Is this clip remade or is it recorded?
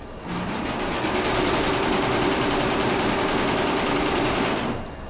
recorded